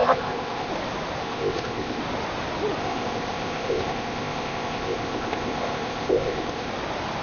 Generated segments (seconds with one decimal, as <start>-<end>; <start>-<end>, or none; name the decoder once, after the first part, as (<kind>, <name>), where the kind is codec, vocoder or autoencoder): 0.0-0.7 (codec, ZipCodec); 1.2-2.0; 2.8-6.7